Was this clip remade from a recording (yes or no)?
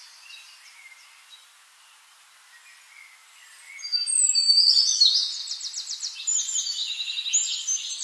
no